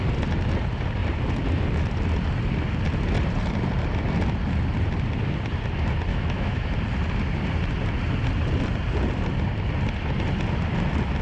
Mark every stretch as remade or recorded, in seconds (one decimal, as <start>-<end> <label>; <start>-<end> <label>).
0.0-6.1 recorded; 6.1-6.7 remade; 6.7-11.2 recorded